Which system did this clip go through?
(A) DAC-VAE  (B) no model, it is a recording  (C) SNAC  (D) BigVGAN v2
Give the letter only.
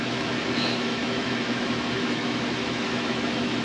A